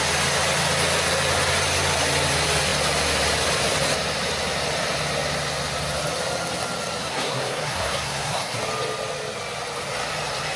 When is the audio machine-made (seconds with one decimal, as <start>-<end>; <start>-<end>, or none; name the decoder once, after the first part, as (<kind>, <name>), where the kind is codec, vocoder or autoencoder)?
7.0-8.6 (codec, SNAC)